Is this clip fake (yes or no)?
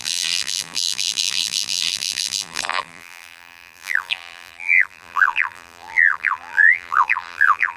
yes